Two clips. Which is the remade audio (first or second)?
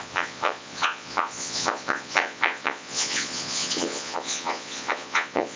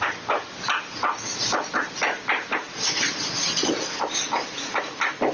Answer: first